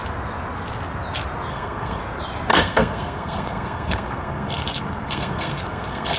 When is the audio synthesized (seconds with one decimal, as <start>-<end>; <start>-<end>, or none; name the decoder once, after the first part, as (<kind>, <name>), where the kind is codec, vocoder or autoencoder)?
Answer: 1.5-2.0 (codec, SNAC); 2.5-6.2